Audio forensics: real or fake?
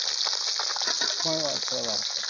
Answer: real